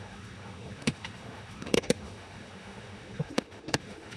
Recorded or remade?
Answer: remade